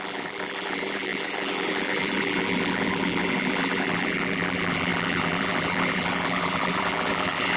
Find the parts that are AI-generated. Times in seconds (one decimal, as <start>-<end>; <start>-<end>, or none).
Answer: 0.0-7.6